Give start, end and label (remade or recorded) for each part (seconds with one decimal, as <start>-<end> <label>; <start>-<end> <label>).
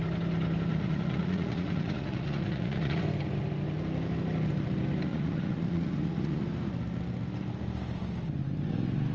0.0-0.7 recorded; 0.7-3.0 remade; 3.0-5.1 recorded; 5.1-6.4 remade; 6.4-9.1 recorded